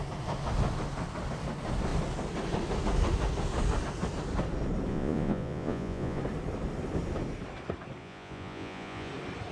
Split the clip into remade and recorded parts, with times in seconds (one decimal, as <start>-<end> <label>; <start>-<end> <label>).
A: 0.0-4.9 recorded; 4.9-6.2 remade; 6.2-8.0 recorded; 8.0-9.1 remade; 9.1-9.5 recorded